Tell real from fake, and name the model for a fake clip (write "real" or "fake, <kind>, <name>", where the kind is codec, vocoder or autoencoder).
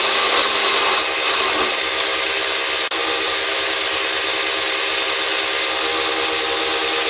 real